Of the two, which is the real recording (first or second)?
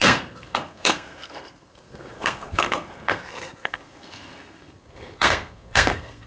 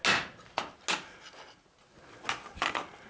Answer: second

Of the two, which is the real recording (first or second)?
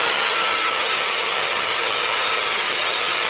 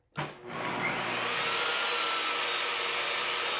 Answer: second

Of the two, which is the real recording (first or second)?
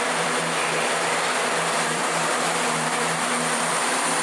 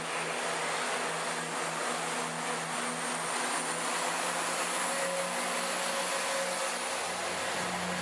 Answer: second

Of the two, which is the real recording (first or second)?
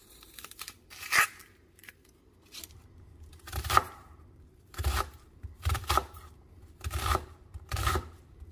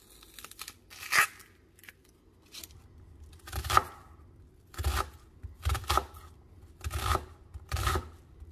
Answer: second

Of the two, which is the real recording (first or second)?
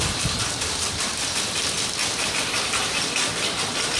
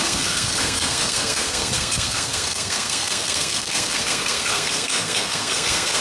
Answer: first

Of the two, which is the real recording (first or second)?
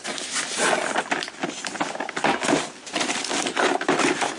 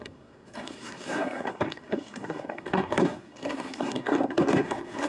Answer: first